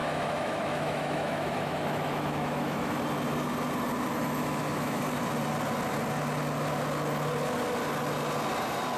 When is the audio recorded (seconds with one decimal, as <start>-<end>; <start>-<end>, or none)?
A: 3.0-4.1; 5.0-9.0